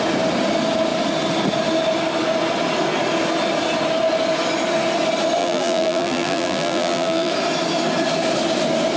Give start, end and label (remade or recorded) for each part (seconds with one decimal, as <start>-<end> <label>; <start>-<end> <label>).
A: 0.0-5.4 recorded; 5.4-7.3 remade; 7.3-9.0 recorded